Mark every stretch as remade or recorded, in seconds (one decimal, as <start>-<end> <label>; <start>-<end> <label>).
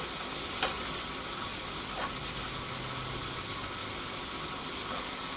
0.0-5.4 recorded